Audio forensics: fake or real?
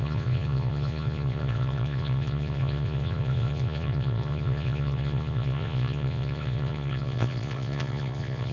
fake